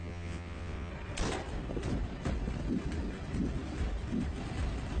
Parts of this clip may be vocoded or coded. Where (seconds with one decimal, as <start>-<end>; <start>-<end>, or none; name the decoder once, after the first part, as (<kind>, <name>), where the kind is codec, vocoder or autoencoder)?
0.0-0.9 (vocoder, WaveNeXt)